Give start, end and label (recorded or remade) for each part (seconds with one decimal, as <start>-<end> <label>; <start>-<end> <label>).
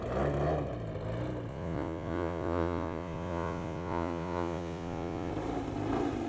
0.0-1.5 recorded; 1.5-5.3 remade; 5.3-6.3 recorded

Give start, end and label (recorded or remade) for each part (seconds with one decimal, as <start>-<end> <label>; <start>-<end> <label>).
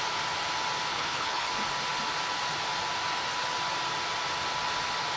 0.0-0.9 recorded; 0.9-1.5 remade; 1.5-5.2 recorded